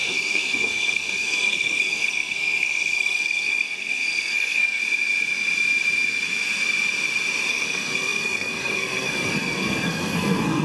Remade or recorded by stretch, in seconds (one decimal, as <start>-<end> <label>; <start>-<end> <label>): 0.0-4.8 remade; 4.8-7.5 recorded; 7.5-10.6 remade